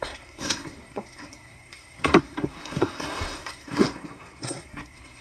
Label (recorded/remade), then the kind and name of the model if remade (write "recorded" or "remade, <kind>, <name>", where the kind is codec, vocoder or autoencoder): remade, codec, SNAC